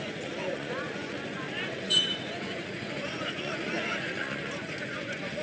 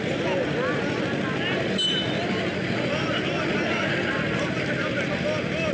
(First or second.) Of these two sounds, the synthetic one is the first